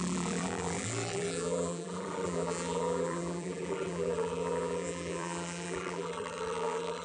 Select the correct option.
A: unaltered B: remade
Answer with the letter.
B